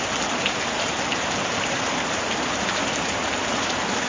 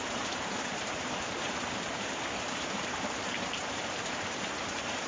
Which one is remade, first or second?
second